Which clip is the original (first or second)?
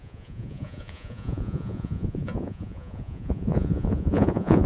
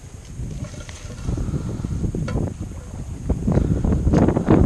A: second